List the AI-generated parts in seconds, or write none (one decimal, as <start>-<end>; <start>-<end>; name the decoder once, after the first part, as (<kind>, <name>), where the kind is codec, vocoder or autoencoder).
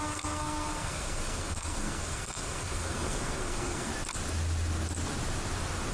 0.0-3.9 (codec, SNAC)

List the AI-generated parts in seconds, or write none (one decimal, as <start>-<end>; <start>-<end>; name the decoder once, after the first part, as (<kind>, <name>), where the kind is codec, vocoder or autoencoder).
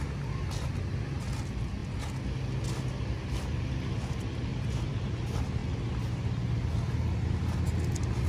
4.5-5.1 (vocoder, BigVGAN v2)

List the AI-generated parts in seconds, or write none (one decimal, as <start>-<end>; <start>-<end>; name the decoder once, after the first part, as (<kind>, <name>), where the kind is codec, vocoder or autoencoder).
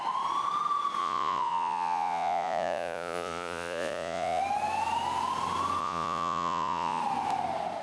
1.0-4.4 (vocoder, Vocos); 5.8-7.0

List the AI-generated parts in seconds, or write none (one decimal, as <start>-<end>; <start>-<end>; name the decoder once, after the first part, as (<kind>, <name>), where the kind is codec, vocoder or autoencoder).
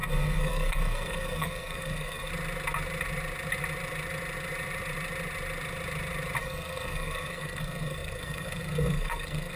0.0-2.3 (codec, SNAC); 6.4-9.6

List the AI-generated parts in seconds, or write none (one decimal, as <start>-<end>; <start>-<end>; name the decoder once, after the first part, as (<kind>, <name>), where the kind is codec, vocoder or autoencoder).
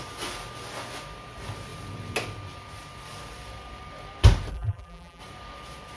4.5-5.2 (vocoder, BigVGAN v2)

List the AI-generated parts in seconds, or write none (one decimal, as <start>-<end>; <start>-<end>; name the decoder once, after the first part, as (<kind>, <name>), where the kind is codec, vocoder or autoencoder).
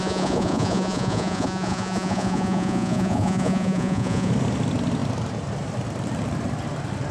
0.0-4.3 (vocoder, Vocos)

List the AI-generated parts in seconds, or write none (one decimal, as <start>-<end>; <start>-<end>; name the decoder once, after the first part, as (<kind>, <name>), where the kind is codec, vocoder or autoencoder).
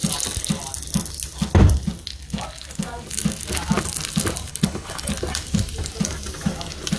4.5-5.1 (codec, HILCodec)